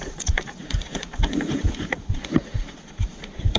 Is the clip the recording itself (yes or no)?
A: no